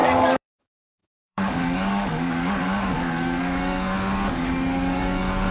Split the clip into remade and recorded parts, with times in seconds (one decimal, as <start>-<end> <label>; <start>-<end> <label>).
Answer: 0.0-5.5 remade